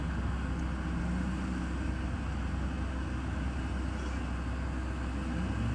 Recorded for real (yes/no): yes